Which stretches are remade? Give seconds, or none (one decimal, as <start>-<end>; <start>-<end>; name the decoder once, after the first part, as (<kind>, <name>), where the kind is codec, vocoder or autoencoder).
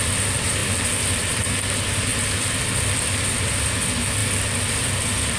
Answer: 0.6-1.4 (vocoder, BigVGAN v2); 2.1-3.8; 4.2-5.4